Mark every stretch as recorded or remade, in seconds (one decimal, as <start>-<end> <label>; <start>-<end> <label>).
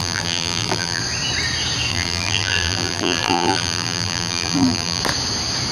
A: 0.0-1.0 remade; 1.0-1.9 recorded; 1.9-5.0 remade; 5.0-5.7 recorded